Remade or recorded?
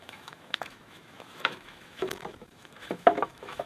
remade